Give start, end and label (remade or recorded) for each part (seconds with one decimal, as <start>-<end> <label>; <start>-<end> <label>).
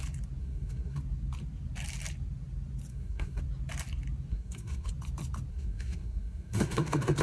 0.0-0.4 recorded; 0.4-1.0 remade; 1.0-2.9 recorded; 2.9-3.4 remade; 3.4-4.3 recorded; 4.3-4.9 remade; 4.9-5.5 recorded; 5.5-7.2 remade